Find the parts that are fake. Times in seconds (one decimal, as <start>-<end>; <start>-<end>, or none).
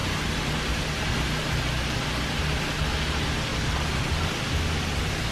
3.5-5.3